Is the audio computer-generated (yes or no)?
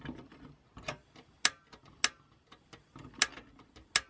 no